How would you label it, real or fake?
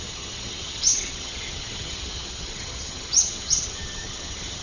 fake